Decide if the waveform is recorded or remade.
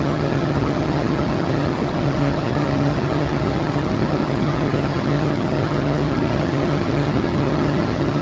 remade